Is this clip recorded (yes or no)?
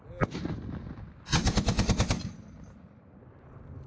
yes